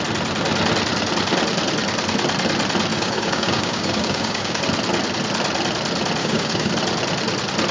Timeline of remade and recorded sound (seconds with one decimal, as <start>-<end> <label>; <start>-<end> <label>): 0.0-2.9 recorded; 2.9-4.6 remade; 4.6-6.2 recorded; 6.2-6.7 remade; 6.7-7.7 recorded

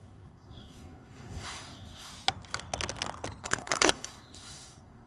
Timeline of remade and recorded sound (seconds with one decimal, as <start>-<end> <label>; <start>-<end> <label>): 0.0-2.1 remade; 2.1-3.4 recorded; 3.4-5.1 remade

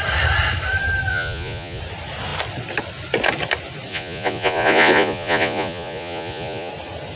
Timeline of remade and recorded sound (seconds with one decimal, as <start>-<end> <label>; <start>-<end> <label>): 0.0-1.1 recorded; 1.1-1.8 remade; 1.8-3.9 recorded; 3.9-6.7 remade; 6.7-7.2 recorded

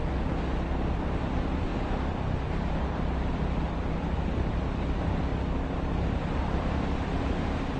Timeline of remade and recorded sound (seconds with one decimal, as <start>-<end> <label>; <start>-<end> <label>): 0.0-0.7 recorded; 0.7-5.3 remade; 5.3-5.9 recorded; 5.9-7.8 remade

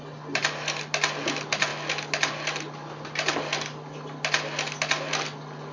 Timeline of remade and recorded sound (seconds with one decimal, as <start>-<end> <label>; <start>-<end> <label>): 0.0-5.7 recorded

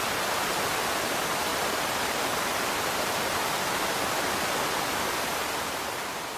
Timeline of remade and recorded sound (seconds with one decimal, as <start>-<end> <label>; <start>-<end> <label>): 0.0-6.4 recorded

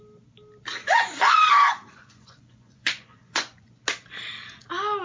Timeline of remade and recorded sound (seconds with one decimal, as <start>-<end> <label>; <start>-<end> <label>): 0.0-0.8 recorded; 0.8-3.8 remade; 3.8-5.0 recorded

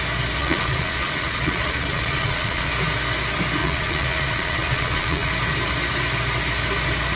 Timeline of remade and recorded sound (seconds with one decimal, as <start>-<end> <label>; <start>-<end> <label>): 0.0-0.4 recorded; 0.4-2.7 remade; 2.7-3.6 recorded; 3.6-5.3 remade; 5.3-7.2 recorded